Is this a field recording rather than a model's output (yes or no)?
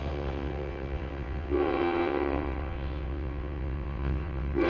no